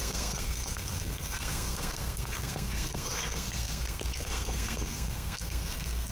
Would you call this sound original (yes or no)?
no